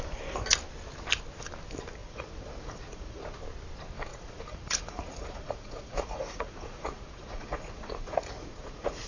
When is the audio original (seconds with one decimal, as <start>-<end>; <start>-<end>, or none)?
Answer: 0.0-2.0; 3.2-4.1